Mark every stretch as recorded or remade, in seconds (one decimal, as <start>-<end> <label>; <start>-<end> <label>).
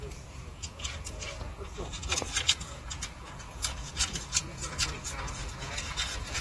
0.0-6.4 remade